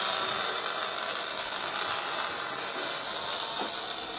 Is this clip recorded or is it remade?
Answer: recorded